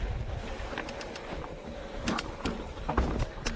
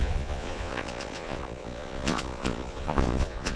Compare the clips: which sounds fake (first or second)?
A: second